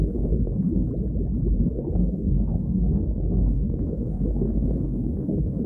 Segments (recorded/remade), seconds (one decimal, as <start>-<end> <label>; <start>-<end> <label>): 0.0-0.9 remade; 0.9-1.6 recorded; 1.6-5.7 remade